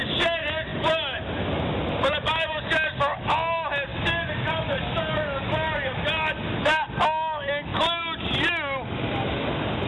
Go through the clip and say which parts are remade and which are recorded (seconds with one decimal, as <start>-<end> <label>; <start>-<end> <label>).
0.0-9.9 recorded